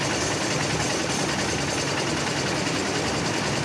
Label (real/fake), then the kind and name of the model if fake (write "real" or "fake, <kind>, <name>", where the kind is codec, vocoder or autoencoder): real